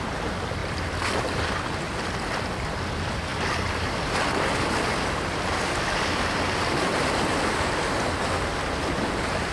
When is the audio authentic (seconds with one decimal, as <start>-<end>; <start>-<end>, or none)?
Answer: 0.0-0.6; 1.2-3.3; 4.8-9.5

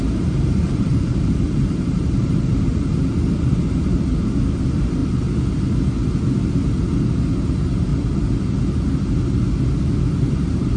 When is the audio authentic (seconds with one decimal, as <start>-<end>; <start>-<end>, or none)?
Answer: 5.0-7.5; 7.9-10.3

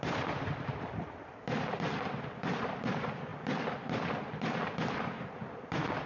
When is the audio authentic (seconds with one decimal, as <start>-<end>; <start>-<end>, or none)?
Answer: none

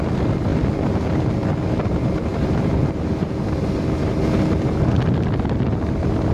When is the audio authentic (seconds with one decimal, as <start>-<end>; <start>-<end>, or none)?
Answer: 0.0-2.3; 3.2-6.3